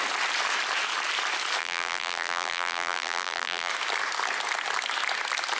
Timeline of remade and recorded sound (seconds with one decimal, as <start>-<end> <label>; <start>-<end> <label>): 0.0-1.6 recorded; 1.6-3.7 remade; 3.7-5.6 recorded